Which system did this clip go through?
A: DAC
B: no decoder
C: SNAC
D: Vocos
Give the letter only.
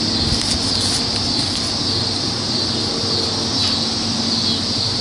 B